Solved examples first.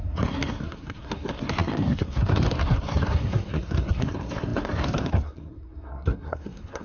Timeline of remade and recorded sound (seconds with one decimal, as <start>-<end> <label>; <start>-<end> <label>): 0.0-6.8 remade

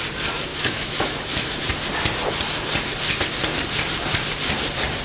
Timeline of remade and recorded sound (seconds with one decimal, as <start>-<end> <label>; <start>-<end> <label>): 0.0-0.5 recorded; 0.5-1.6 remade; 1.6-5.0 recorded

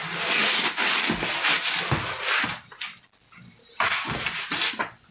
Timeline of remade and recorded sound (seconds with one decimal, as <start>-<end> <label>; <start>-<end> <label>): 0.0-5.1 recorded

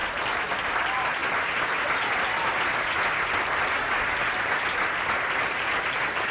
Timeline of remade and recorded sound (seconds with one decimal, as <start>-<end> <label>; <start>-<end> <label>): 0.0-0.6 remade; 0.6-6.3 recorded

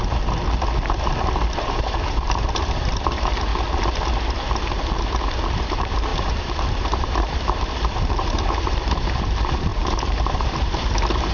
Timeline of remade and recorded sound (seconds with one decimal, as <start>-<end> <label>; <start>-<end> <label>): 0.0-1.6 recorded; 1.6-3.5 remade; 3.5-5.6 recorded; 5.6-11.3 remade